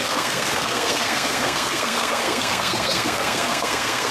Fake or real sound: fake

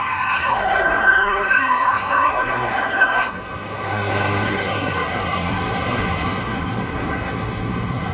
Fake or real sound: fake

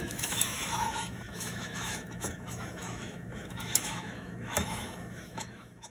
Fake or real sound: fake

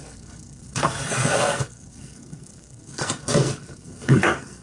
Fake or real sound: fake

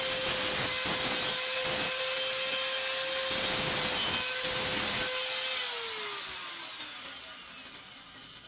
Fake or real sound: real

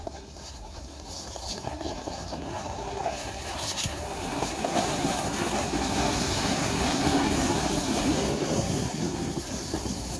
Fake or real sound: fake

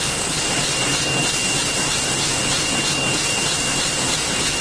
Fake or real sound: real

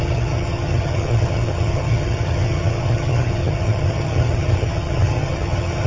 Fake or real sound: fake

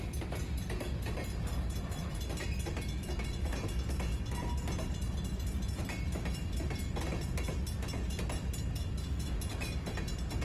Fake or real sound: real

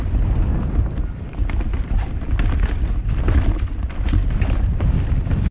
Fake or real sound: real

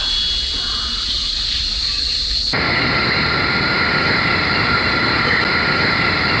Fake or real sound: real